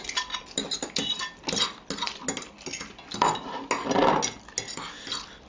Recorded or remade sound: recorded